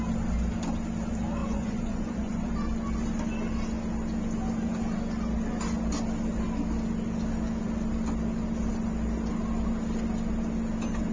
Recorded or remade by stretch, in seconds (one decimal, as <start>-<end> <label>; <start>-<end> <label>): 0.0-1.4 recorded; 1.4-2.5 remade; 2.5-11.1 recorded